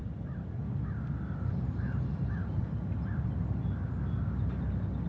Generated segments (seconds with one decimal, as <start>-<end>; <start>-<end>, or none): none